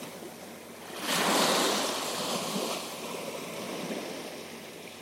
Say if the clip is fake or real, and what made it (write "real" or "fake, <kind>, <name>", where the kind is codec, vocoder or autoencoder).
real